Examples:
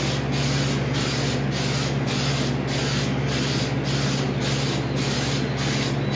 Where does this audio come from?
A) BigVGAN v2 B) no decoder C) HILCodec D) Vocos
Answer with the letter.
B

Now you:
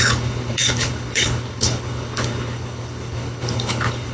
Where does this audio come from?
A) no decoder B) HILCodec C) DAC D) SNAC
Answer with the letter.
B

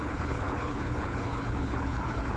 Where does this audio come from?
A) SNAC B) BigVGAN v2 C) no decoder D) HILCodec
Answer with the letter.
D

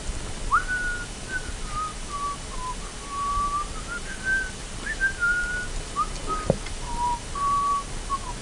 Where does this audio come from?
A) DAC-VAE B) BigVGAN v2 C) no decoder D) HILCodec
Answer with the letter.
C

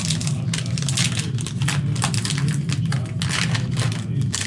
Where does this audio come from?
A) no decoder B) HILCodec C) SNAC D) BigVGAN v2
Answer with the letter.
A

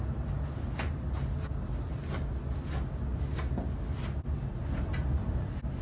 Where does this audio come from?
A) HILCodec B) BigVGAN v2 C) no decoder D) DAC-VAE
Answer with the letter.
C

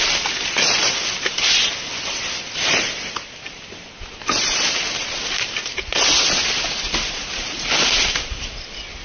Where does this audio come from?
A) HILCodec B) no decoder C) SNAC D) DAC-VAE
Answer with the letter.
B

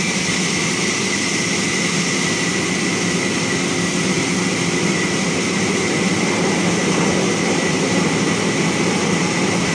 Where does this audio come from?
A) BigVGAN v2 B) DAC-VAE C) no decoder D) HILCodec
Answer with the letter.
C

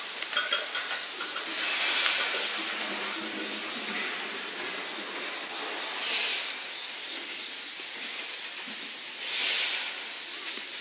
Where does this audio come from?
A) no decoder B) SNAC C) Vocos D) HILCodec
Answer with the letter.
A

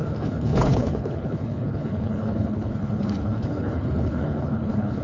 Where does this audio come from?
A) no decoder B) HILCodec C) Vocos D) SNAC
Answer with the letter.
B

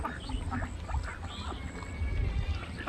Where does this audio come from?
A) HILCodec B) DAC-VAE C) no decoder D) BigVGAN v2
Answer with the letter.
C